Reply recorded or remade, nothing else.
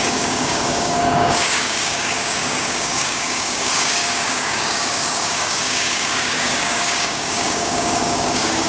remade